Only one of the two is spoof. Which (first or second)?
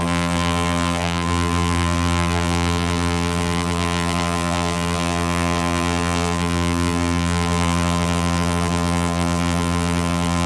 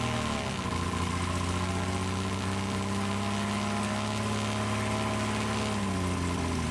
first